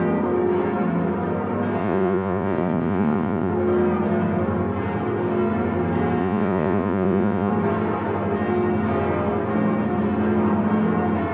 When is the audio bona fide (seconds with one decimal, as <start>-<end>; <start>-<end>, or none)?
0.0-1.8; 3.5-6.2; 7.5-11.3